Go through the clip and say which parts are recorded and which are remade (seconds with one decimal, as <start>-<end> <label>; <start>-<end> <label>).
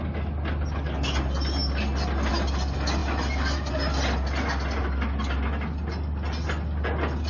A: 0.0-7.3 recorded